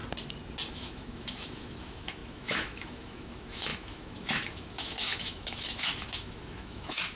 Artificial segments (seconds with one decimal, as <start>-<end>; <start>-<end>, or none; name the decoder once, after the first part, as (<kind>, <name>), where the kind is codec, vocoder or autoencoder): 0.7-7.2 (autoencoder, DAC-VAE)